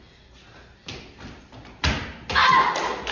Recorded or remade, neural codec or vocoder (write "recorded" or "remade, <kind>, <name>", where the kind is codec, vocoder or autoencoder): recorded